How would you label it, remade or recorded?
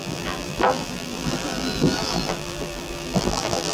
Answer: remade